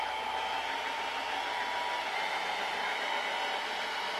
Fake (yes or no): yes